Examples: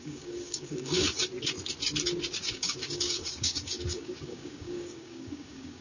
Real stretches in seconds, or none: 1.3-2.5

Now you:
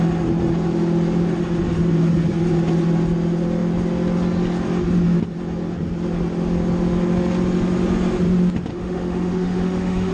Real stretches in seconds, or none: 0.0-8.7

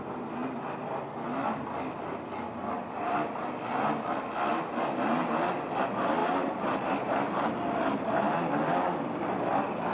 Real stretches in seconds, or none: 0.0-6.2; 7.5-9.9

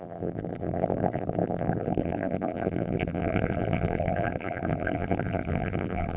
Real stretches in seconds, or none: none

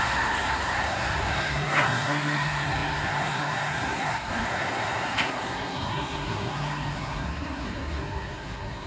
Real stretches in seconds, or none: none

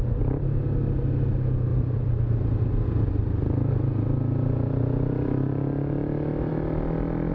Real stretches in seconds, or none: 0.0-1.7; 3.2-7.3

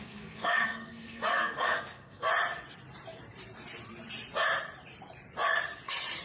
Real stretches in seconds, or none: 2.3-6.2

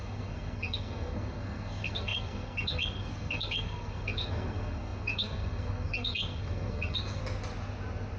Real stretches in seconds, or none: 7.2-8.2